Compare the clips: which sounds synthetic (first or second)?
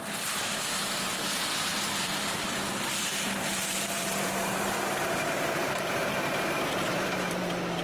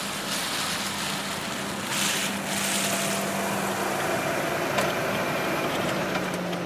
first